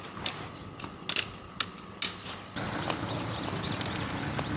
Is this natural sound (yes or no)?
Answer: yes